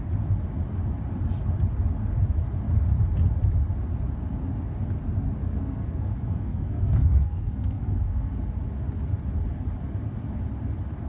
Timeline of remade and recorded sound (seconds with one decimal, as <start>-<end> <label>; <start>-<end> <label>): 0.0-5.4 recorded; 5.4-8.3 remade; 8.3-11.1 recorded